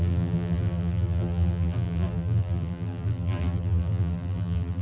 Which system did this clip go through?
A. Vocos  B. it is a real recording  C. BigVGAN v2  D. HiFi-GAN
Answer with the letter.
C